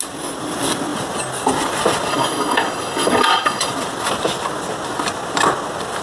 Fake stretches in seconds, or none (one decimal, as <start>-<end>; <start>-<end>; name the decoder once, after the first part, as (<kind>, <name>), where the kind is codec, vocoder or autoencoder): 2.1-3.7 (codec, DAC)